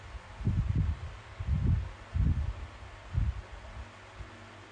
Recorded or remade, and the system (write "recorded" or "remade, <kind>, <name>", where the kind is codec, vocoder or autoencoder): recorded